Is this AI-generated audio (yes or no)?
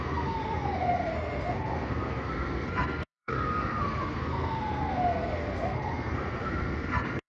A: yes